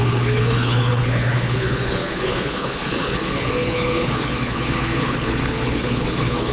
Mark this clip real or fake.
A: fake